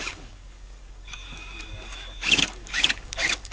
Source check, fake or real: fake